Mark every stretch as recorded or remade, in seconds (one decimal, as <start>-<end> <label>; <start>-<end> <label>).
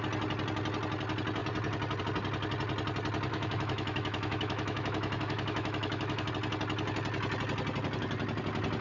0.0-3.3 recorded; 3.3-6.3 remade; 6.3-8.8 recorded